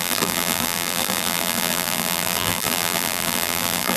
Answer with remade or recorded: remade